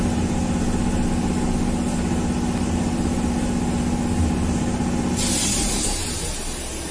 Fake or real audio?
real